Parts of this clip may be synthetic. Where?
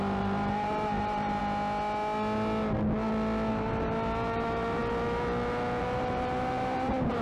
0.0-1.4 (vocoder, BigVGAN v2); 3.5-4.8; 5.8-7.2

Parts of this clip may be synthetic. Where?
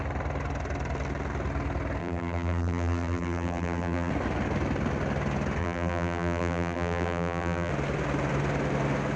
2.0-4.1 (vocoder, BigVGAN v2); 5.6-7.7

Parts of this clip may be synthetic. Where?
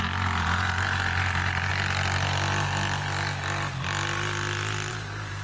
0.0-1.7 (vocoder, BigVGAN v2); 4.9-5.4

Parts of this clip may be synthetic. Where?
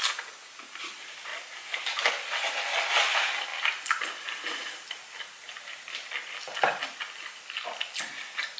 3.5-7.4 (vocoder, BigVGAN v2)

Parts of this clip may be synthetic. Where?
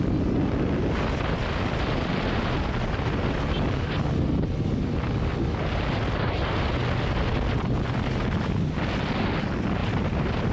9.8-10.5 (vocoder, BigVGAN v2)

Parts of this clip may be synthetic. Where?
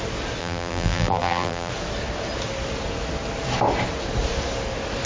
0.4-1.7 (vocoder, BigVGAN v2)